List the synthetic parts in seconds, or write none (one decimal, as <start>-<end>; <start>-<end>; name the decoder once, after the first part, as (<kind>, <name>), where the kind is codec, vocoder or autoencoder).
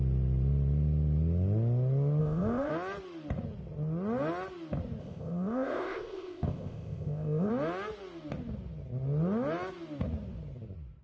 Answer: 2.2-2.7 (codec, ZipCodec); 5.0-7.5